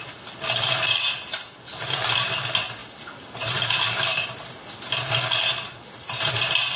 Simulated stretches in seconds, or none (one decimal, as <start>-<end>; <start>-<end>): none